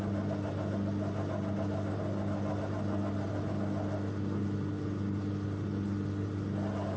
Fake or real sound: real